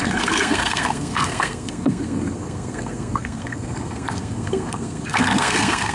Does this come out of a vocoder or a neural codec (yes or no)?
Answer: yes